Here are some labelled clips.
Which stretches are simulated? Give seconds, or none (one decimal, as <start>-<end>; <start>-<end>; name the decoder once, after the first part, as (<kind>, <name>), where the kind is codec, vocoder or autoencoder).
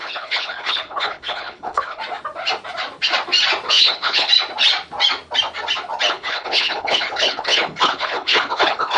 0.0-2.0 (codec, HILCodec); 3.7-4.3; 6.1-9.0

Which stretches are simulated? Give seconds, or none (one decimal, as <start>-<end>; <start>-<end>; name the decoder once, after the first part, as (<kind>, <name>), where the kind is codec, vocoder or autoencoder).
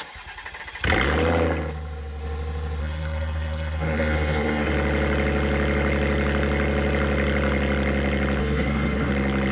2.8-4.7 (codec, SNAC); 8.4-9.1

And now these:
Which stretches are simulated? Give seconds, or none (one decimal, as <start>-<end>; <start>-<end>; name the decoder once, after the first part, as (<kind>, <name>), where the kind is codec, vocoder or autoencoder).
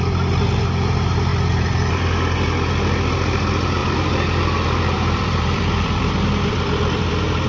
1.3-2.1 (vocoder, BigVGAN v2); 3.8-7.1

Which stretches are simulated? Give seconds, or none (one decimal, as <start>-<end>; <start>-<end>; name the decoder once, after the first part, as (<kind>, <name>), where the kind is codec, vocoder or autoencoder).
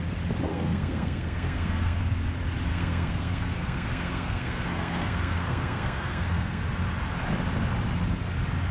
0.5-2.0 (codec, SNAC); 2.7-6.6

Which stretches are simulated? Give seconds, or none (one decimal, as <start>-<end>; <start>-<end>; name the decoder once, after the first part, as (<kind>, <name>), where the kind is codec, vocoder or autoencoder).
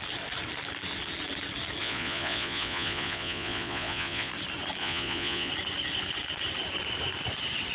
1.8-4.3 (vocoder, Vocos); 4.8-5.5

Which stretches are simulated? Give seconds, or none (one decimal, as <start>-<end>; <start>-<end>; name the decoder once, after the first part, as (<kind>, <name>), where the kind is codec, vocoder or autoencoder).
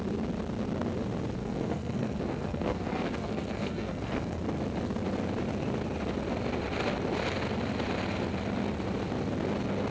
1.4-4.4 (codec, SNAC)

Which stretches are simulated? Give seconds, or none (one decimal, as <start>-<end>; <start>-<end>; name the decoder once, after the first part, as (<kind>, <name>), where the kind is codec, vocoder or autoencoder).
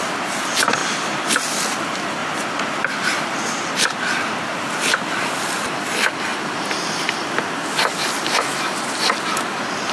none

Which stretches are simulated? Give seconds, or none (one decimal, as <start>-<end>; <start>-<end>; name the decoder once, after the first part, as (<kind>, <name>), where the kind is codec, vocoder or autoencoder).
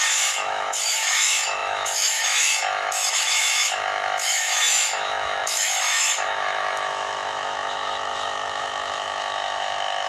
0.0-10.1 (autoencoder, DAC-VAE)